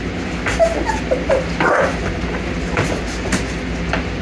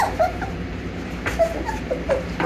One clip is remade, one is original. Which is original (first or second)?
first